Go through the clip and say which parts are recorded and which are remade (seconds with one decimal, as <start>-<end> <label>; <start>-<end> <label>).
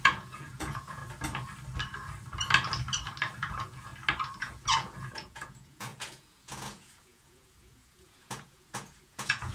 0.0-1.0 remade; 1.0-3.5 recorded; 3.5-3.9 remade; 3.9-4.4 recorded; 4.4-9.5 remade